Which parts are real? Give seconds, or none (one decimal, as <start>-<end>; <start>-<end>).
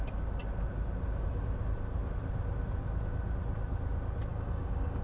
0.0-4.3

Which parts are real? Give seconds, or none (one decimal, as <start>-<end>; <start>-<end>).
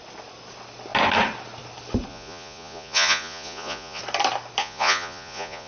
0.0-2.1; 4.0-4.6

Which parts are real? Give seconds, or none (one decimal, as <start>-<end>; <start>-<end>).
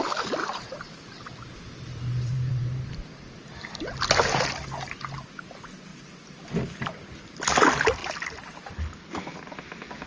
0.0-0.4; 3.5-5.9; 6.4-10.1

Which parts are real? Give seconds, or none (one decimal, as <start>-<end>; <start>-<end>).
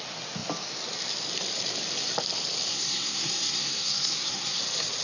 0.0-2.7; 4.6-5.0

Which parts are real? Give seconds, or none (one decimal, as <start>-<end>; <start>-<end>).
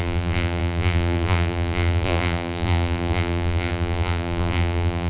none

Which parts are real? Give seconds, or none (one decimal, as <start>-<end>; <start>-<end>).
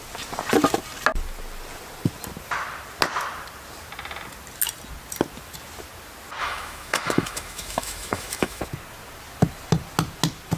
0.0-6.4; 8.6-10.6